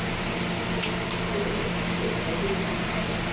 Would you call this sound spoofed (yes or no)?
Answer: no